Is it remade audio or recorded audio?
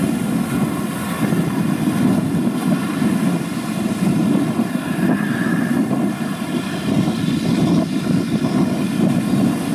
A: recorded